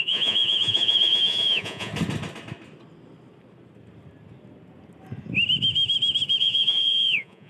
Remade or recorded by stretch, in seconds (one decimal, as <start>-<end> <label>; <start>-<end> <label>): 0.0-1.9 remade; 1.9-6.4 recorded; 6.4-7.5 remade